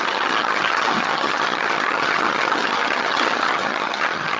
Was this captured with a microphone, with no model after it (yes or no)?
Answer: no